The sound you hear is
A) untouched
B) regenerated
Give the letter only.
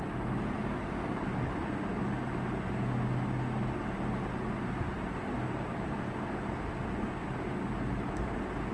A